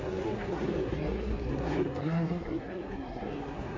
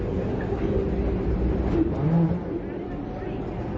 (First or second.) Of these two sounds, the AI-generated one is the first